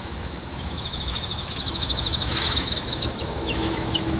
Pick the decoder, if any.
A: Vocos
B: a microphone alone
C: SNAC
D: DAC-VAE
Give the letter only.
D